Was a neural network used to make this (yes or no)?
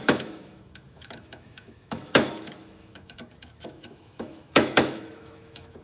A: yes